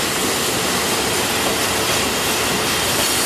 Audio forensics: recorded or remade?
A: recorded